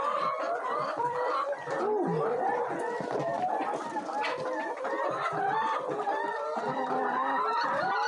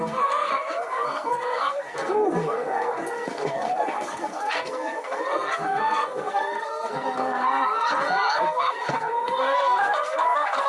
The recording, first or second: first